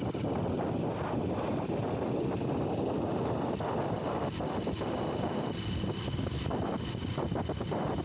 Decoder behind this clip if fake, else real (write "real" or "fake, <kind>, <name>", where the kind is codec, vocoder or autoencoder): real